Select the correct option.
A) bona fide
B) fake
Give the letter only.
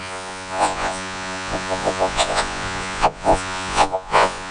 B